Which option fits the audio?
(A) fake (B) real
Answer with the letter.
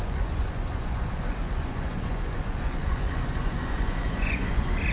A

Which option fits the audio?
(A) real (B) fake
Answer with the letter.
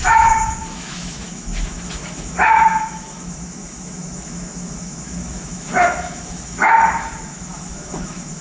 B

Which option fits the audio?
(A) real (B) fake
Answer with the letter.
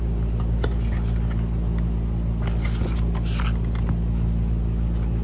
A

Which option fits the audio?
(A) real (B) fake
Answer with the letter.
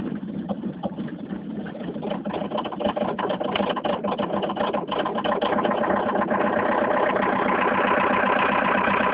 A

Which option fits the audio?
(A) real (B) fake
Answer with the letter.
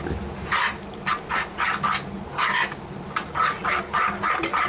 A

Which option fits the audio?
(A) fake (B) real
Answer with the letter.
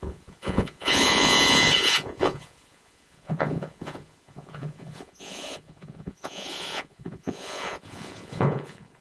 A